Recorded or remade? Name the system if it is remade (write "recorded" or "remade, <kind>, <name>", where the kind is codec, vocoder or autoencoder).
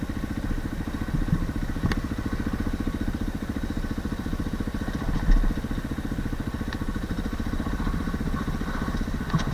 recorded